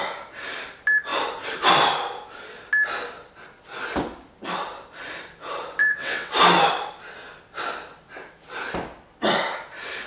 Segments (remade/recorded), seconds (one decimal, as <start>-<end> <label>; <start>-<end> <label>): 0.0-5.8 recorded; 5.8-6.3 remade; 6.3-10.1 recorded